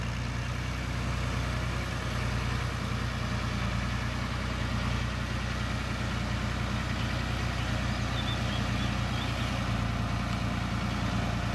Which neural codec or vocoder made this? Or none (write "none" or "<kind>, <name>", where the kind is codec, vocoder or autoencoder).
none